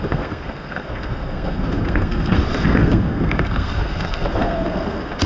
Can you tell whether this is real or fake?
fake